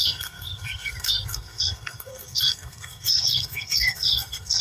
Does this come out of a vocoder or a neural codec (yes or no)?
yes